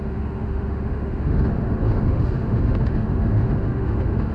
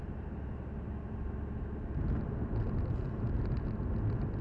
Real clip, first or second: second